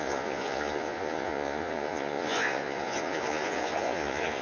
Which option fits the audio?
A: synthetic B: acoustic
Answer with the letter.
A